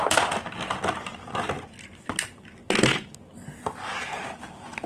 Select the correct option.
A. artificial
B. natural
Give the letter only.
B